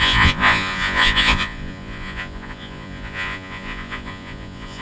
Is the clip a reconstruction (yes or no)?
yes